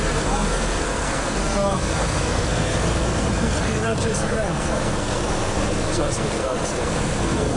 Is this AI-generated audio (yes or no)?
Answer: yes